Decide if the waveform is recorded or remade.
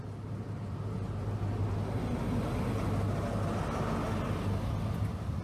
recorded